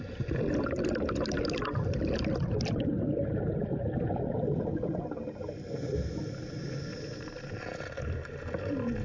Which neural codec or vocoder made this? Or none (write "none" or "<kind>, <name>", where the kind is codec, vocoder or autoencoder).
none